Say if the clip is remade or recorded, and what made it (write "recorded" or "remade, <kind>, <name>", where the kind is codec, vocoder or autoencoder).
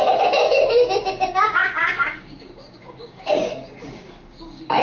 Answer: remade, codec, DAC